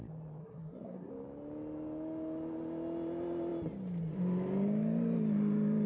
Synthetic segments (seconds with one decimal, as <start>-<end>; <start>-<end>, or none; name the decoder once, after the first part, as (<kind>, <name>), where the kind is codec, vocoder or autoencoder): 0.4-1.1 (codec, SNAC)